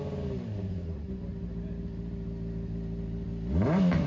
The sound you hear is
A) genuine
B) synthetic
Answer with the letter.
A